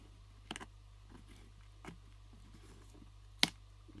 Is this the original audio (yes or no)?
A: yes